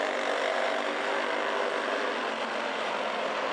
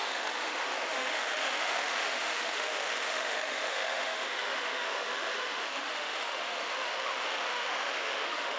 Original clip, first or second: first